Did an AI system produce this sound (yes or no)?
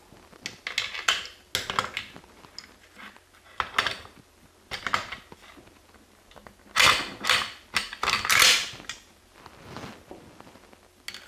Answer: no